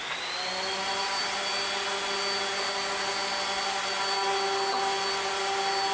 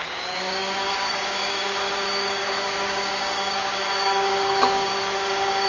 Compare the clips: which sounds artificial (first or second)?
second